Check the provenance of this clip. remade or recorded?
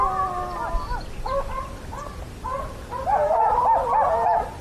recorded